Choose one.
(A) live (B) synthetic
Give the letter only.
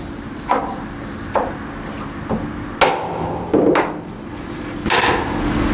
A